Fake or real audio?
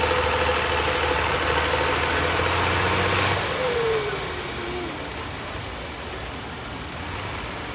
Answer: real